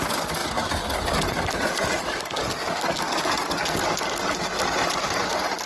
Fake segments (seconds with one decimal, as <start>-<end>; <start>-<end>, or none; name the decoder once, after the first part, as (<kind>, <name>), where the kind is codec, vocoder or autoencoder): none